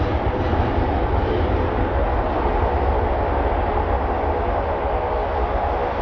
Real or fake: real